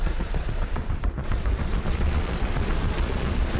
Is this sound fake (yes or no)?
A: yes